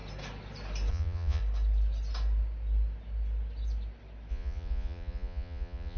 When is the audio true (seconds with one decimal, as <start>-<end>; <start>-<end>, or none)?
0.0-0.9; 1.4-4.3